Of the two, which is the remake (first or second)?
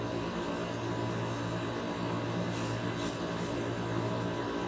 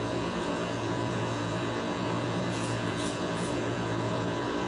second